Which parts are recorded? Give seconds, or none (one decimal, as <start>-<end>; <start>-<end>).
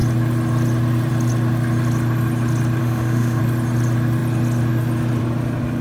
0.0-2.8; 3.4-5.8